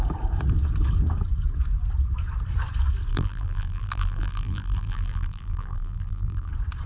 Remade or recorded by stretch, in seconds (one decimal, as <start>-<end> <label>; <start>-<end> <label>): 0.0-3.1 recorded; 3.1-6.5 remade; 6.5-6.9 recorded

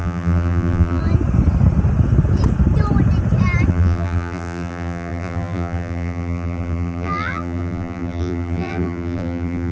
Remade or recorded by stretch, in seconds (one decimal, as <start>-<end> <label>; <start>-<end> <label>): 0.0-1.0 remade; 1.0-3.7 recorded; 3.7-9.7 remade

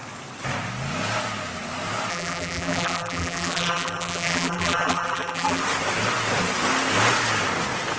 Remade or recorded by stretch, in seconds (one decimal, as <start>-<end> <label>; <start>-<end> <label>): 0.0-2.1 recorded; 2.1-5.6 remade; 5.6-8.0 recorded

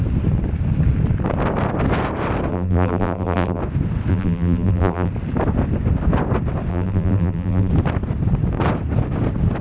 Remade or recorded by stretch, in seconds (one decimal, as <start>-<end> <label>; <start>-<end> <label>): 0.0-2.5 recorded; 2.5-3.6 remade; 3.6-4.1 recorded; 4.1-5.1 remade; 5.1-6.7 recorded; 6.7-7.7 remade; 7.7-9.6 recorded

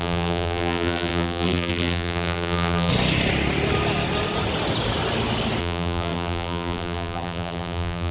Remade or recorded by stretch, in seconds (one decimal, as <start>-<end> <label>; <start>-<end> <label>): 0.0-2.9 remade; 2.9-5.6 recorded; 5.6-8.1 remade

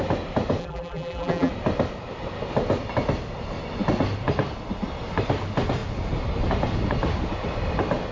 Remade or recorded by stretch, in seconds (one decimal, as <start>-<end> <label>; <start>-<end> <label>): 0.0-0.6 recorded; 0.6-1.5 remade; 1.5-8.1 recorded

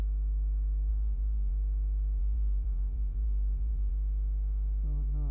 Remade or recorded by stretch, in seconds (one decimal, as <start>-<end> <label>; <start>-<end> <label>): 0.0-0.9 recorded; 0.9-1.5 remade; 1.5-2.2 recorded; 2.2-3.9 remade; 3.9-5.3 recorded